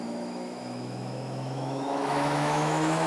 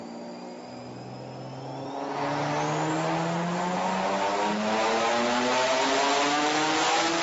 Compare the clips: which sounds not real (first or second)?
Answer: first